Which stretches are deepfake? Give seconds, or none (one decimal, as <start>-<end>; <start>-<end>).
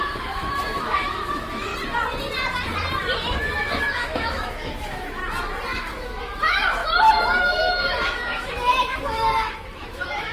0.0-1.7; 3.4-5.2; 5.8-6.8; 7.4-10.3